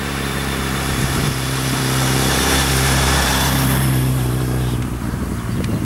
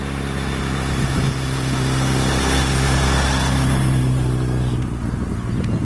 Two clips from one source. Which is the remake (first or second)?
first